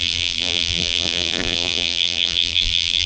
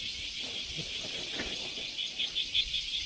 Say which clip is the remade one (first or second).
first